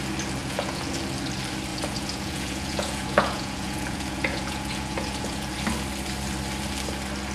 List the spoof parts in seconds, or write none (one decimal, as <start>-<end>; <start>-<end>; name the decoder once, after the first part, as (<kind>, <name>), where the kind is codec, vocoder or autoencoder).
0.4-0.9 (vocoder, Vocos); 1.7-5.5